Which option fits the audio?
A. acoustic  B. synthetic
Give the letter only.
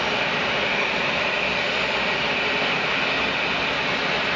A